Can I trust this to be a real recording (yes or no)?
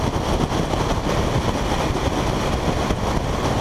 yes